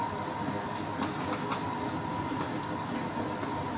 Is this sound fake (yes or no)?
no